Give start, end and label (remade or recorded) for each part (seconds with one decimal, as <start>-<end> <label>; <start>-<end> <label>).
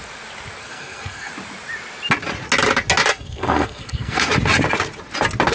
0.0-0.6 recorded; 0.6-1.3 remade; 1.3-3.1 recorded; 3.1-4.3 remade; 4.3-5.5 recorded